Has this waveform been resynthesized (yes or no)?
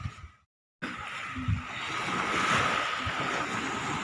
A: no